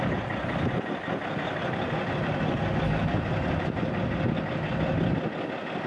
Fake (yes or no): no